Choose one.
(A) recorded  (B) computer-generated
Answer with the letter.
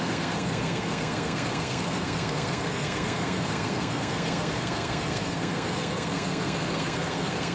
B